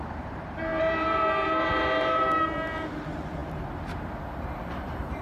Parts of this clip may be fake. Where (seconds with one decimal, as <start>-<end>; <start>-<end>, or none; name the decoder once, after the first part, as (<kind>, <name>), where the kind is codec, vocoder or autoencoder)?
0.0-5.2 (vocoder, BigVGAN v2)